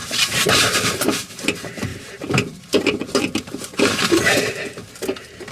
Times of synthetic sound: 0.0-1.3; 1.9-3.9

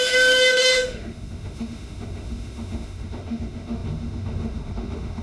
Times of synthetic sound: 0.0-5.2

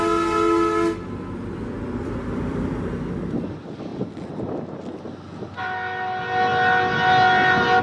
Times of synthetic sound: none

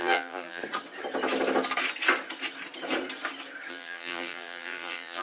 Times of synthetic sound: 0.0-0.6; 3.7-5.2

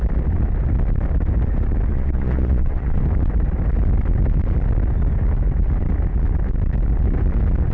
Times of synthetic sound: 1.9-3.0

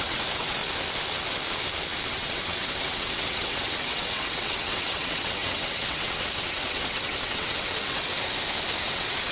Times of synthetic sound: 0.0-0.6; 2.1-8.1; 8.8-9.3

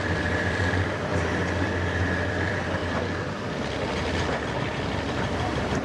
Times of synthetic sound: 0.0-1.1; 2.0-2.8; 4.6-5.8

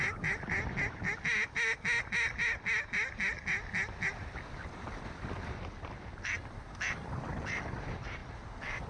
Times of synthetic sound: none